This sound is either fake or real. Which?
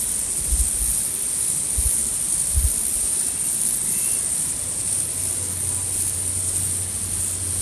real